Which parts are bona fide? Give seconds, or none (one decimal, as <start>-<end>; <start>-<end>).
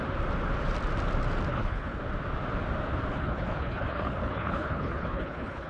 0.0-1.5; 2.0-3.1